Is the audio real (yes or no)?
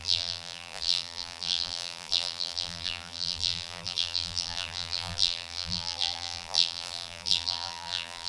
no